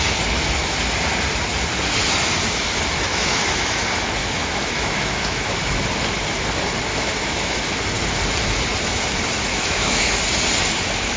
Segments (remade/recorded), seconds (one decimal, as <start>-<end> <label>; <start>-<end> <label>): 0.0-3.1 recorded; 3.1-3.8 remade; 3.8-4.2 recorded; 4.2-5.9 remade; 5.9-6.9 recorded; 6.9-7.6 remade; 7.6-9.5 recorded; 9.5-10.1 remade; 10.1-11.2 recorded